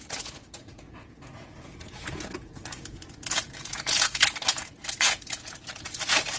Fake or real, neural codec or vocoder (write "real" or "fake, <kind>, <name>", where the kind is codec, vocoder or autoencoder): fake, vocoder, Vocos